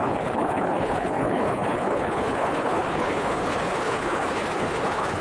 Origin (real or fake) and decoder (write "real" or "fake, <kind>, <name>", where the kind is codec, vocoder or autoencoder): fake, codec, HILCodec